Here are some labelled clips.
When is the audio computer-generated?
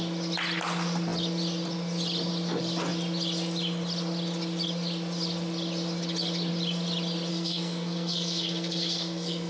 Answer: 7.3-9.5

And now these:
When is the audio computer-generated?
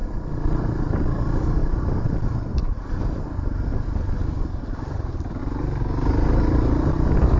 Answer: 1.6-5.4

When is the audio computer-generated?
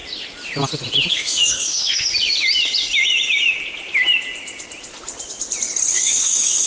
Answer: 1.1-1.9; 5.9-6.7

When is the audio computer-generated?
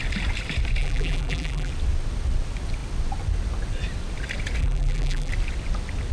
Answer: 0.8-1.7; 4.6-5.3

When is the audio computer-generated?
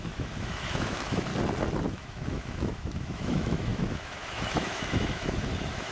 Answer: 0.0-1.3; 1.9-5.9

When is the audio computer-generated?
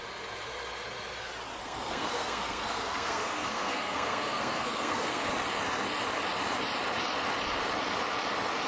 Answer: 1.6-5.3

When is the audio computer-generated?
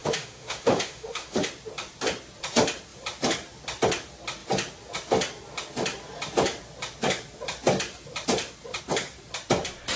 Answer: 0.0-1.5